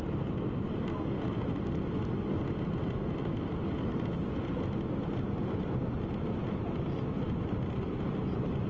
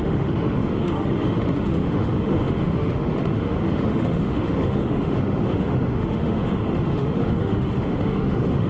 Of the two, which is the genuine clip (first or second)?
first